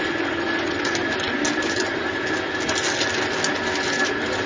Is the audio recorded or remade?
recorded